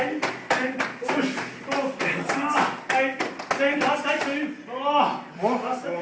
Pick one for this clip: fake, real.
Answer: real